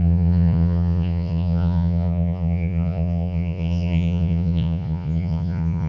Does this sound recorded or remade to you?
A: remade